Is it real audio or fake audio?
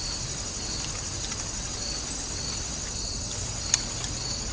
real